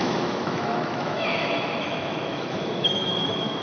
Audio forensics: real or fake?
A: fake